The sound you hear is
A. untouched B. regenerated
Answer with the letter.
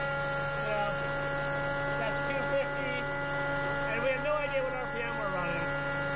A